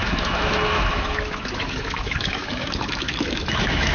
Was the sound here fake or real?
fake